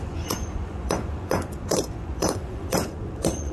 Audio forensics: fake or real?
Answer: fake